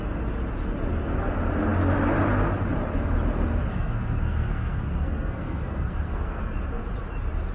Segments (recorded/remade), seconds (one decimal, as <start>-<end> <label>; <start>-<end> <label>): 0.0-3.7 recorded; 3.7-6.4 remade; 6.4-7.5 recorded